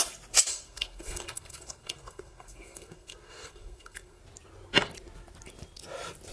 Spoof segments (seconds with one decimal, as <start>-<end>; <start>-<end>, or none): 0.5-4.2